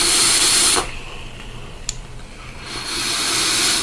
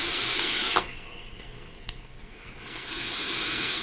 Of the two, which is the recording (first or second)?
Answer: first